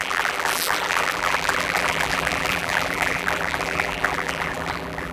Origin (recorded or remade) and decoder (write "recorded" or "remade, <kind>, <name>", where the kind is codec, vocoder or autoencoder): remade, vocoder, BigVGAN v2